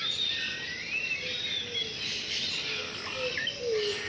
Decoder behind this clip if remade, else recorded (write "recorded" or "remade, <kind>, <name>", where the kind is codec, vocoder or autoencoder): recorded